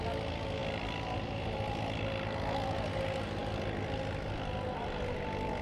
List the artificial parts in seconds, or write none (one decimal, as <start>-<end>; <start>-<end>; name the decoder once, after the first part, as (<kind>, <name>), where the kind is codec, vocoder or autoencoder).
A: none